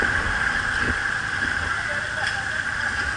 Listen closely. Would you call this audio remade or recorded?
recorded